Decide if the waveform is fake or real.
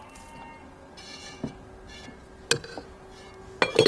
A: real